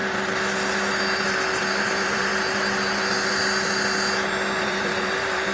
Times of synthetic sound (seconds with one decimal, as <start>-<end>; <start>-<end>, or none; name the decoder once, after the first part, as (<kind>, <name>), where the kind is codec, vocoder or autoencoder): 1.6-2.3 (vocoder, BigVGAN v2); 4.6-5.5